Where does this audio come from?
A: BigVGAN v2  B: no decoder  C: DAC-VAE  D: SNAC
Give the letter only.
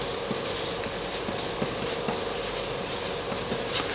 B